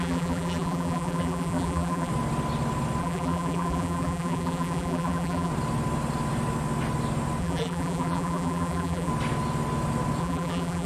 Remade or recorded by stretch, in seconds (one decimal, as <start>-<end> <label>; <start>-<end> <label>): 0.0-2.1 remade; 2.1-3.0 recorded; 3.0-5.5 remade; 5.5-7.4 recorded; 7.4-9.1 remade; 9.1-10.2 recorded; 10.2-10.9 remade